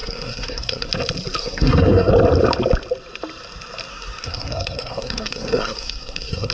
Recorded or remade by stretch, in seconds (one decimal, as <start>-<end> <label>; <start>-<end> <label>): 0.0-0.9 remade; 0.9-1.4 recorded; 1.4-2.1 remade; 2.1-3.9 recorded; 3.9-6.5 remade